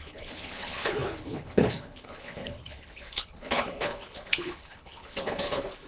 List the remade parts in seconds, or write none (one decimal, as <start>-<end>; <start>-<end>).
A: 0.0-5.9